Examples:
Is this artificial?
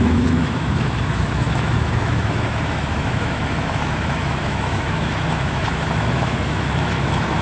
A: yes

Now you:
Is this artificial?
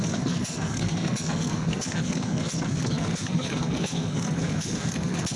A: yes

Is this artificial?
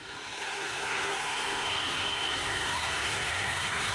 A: yes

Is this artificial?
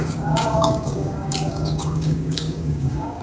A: yes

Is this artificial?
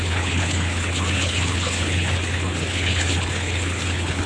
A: yes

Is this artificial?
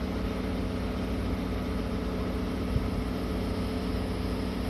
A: no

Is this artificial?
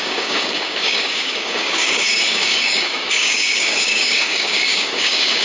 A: yes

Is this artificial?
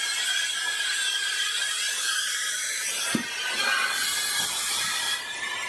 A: no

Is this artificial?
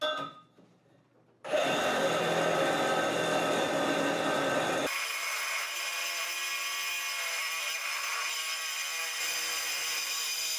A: no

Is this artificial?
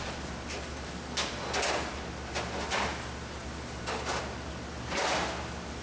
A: no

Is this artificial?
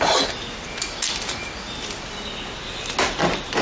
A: no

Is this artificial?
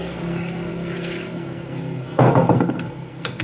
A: yes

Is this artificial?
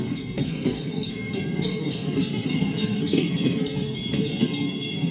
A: yes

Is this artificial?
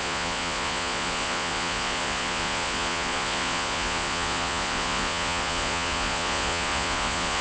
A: yes